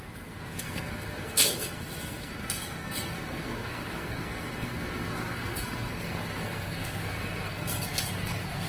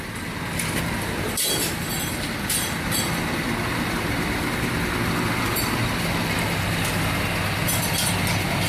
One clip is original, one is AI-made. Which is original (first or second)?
second